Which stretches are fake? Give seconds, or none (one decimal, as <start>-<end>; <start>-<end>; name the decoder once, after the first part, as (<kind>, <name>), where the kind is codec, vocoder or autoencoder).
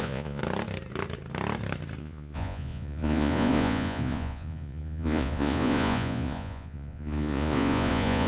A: 0.0-0.4 (vocoder, Vocos); 2.0-8.3